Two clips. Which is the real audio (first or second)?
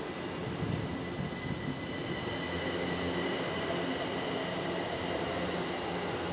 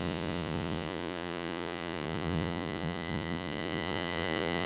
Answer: first